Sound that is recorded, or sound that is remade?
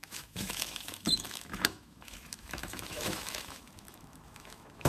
remade